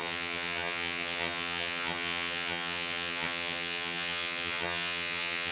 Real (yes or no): no